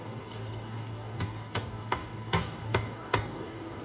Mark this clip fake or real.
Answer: fake